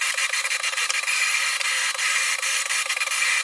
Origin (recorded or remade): recorded